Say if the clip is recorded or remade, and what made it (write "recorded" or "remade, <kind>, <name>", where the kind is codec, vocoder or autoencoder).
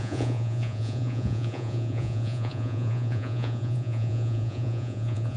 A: remade, vocoder, Vocos